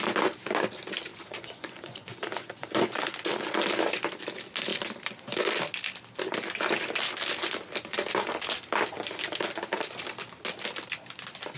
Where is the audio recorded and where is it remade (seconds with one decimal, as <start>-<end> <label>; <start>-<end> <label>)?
0.0-1.1 recorded; 1.1-3.1 remade; 3.1-11.6 recorded